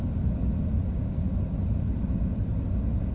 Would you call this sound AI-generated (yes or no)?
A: no